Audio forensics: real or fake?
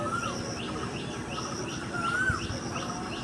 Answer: real